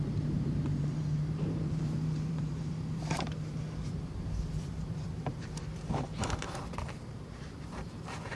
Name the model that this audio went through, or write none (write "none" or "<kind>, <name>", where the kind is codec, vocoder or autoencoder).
vocoder, BigVGAN v2